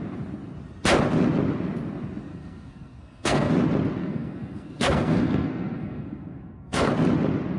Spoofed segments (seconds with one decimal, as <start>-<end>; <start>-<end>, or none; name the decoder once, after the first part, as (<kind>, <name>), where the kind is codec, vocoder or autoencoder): 2.3-3.5 (codec, SNAC); 4.0-6.9